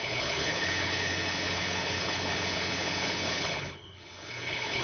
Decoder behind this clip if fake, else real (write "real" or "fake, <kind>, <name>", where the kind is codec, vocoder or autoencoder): fake, codec, HILCodec